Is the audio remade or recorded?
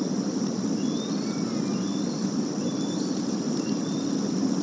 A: recorded